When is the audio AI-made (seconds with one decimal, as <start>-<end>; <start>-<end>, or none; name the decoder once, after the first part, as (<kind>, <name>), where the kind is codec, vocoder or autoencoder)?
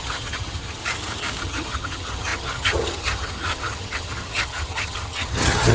0.0-0.8 (vocoder, HiFi-GAN); 1.4-5.7